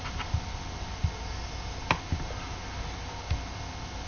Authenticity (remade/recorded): recorded